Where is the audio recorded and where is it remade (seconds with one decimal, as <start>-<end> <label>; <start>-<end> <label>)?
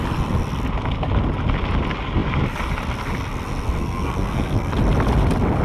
0.0-3.8 recorded; 3.8-4.7 remade; 4.7-5.6 recorded